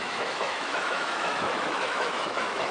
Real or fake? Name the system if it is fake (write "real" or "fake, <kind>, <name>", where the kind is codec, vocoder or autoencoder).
fake, autoencoder, DAC-VAE